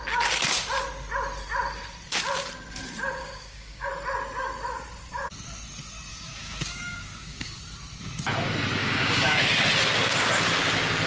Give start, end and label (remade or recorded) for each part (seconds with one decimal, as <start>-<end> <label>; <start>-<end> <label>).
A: 0.0-3.2 recorded; 3.2-3.9 remade; 3.9-6.1 recorded; 6.1-7.6 remade; 7.6-8.8 recorded; 8.8-9.6 remade; 9.6-11.1 recorded